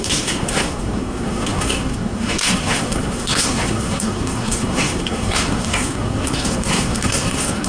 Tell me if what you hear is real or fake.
fake